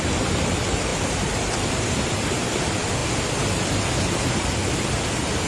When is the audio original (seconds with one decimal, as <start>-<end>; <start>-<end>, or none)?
3.0-5.1